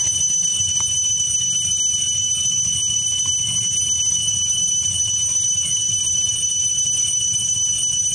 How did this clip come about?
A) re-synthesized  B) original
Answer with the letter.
B